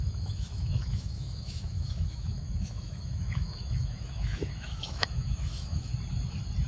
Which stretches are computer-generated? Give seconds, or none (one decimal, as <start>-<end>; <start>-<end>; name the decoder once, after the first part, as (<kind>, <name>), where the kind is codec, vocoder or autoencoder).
0.0-5.9 (autoencoder, DAC-VAE)